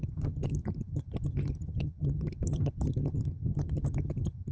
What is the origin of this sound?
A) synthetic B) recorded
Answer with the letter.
A